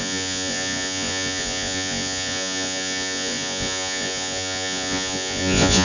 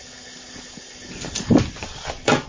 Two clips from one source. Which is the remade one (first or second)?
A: first